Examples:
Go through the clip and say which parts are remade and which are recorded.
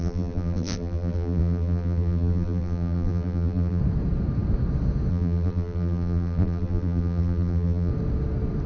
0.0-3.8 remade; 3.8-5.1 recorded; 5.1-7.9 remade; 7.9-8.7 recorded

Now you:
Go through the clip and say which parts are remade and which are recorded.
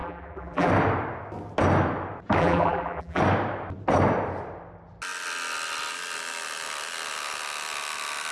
0.0-0.7 remade; 0.7-2.4 recorded; 2.4-3.2 remade; 3.2-8.3 recorded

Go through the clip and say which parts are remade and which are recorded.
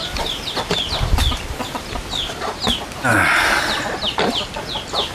0.0-2.6 remade; 2.6-3.1 recorded; 3.1-5.1 remade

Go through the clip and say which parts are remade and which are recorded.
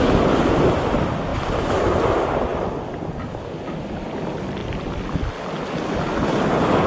0.0-6.9 recorded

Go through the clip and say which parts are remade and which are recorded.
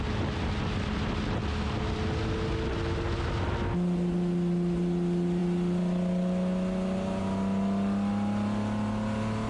0.0-9.5 recorded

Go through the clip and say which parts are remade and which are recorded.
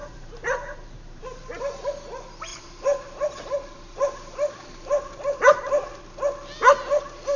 0.0-1.2 remade; 1.2-2.5 recorded; 2.5-6.0 remade; 6.0-7.4 recorded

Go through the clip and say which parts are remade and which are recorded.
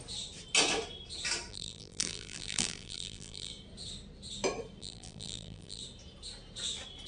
0.0-1.5 recorded; 1.5-3.5 remade; 3.5-4.8 recorded; 4.8-5.8 remade; 5.8-7.1 recorded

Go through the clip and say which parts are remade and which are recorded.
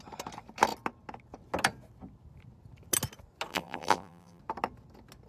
0.0-3.5 recorded; 3.5-4.4 remade; 4.4-5.3 recorded